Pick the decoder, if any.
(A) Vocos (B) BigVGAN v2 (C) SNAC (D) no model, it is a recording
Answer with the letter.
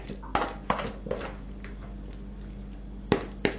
D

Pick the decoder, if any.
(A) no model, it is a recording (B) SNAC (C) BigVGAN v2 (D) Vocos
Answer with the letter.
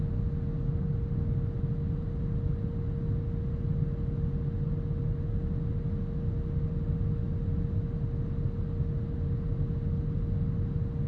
A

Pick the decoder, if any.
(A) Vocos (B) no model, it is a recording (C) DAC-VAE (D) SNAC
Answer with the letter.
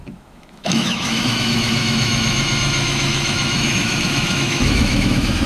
C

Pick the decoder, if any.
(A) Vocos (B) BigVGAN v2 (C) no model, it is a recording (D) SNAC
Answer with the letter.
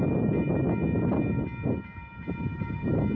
C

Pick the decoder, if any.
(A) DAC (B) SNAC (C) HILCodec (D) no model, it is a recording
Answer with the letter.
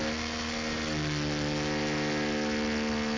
D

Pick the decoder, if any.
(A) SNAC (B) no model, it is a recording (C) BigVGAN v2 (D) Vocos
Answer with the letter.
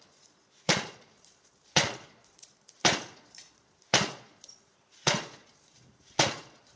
D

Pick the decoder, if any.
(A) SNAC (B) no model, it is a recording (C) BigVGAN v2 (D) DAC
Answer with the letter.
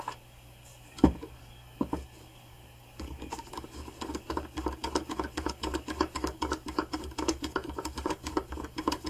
D